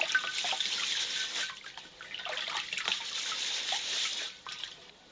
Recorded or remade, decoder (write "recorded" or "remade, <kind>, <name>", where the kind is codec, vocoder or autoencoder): recorded